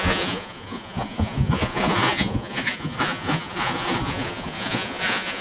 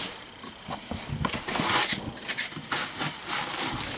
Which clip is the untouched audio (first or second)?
second